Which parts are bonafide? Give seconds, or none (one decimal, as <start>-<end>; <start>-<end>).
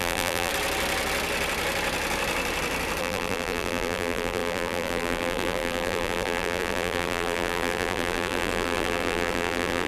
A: 0.5-3.0